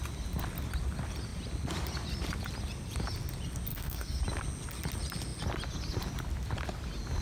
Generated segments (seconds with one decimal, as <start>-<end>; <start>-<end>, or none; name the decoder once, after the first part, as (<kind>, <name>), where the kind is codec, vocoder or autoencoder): 3.7-4.2 (codec, SNAC)